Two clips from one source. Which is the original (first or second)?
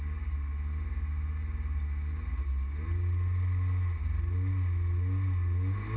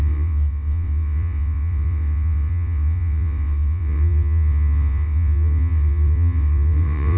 first